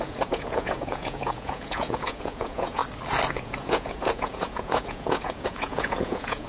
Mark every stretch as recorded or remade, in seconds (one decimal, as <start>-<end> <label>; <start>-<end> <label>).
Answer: 0.0-2.8 remade; 2.8-3.3 recorded; 3.3-6.5 remade